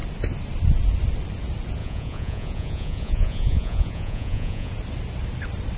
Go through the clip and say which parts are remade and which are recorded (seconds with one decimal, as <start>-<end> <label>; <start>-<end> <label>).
0.0-1.8 recorded; 1.8-4.7 remade; 4.7-5.8 recorded

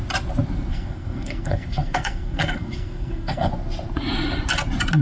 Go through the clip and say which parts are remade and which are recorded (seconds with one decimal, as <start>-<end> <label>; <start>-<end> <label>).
0.0-0.7 recorded; 0.7-3.5 remade; 3.5-5.0 recorded

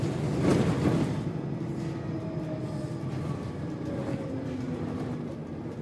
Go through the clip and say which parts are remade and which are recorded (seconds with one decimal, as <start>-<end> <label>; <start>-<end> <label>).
0.0-5.8 recorded

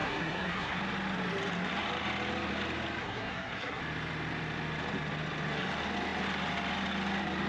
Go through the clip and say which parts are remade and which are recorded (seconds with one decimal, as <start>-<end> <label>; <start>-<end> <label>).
0.0-0.8 remade; 0.8-3.0 recorded; 3.0-3.8 remade; 3.8-7.5 recorded

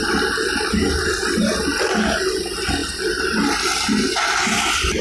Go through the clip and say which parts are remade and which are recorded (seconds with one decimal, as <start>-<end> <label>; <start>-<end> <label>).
0.0-5.0 recorded